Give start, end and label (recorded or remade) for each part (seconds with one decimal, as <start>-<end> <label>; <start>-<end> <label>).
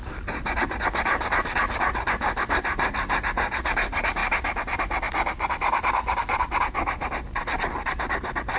0.0-4.2 remade; 4.2-8.6 recorded